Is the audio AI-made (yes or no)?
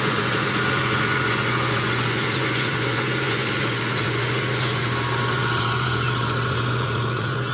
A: yes